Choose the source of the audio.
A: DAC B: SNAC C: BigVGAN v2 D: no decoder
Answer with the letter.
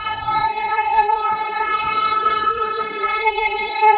B